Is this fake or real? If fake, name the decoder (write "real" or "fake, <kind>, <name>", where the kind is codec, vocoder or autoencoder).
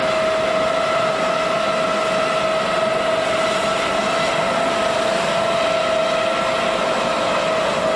real